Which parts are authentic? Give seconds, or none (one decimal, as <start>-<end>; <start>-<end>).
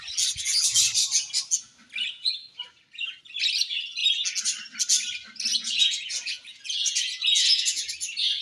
0.0-5.5; 7.9-8.4